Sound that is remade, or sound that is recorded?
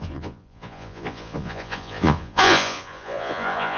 remade